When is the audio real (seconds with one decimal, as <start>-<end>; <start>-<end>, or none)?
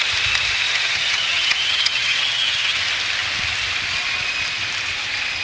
0.0-0.7; 2.8-5.4